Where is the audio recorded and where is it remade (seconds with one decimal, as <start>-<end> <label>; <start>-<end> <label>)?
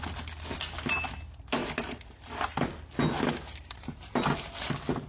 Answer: 0.0-5.1 recorded